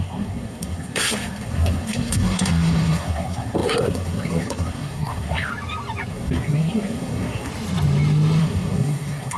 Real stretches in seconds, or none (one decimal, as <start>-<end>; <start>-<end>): 5.5-6.1; 7.5-8.4